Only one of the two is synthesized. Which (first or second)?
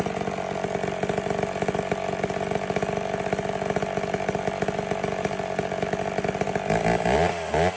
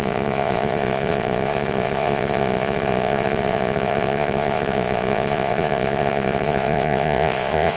second